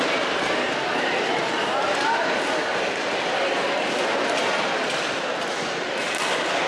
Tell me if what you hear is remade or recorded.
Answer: recorded